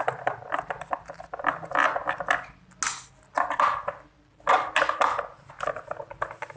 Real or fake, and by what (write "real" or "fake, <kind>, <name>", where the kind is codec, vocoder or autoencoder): real